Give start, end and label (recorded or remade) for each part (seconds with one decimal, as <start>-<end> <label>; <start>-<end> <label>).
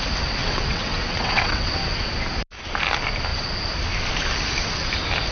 0.0-0.4 recorded; 0.4-1.7 remade; 1.7-5.3 recorded